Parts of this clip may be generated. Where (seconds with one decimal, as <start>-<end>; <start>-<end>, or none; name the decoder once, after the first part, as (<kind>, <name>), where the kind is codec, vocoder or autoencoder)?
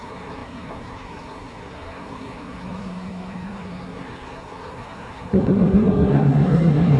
0.0-7.0 (codec, SNAC)